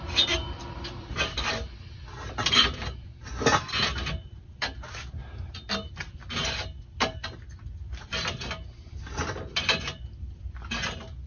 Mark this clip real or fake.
real